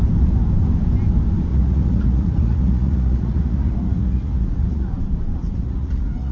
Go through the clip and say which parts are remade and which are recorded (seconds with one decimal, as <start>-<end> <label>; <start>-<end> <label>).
0.0-1.5 recorded; 1.5-5.0 remade; 5.0-5.4 recorded; 5.4-6.3 remade